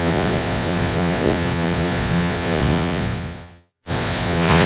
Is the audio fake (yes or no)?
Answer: yes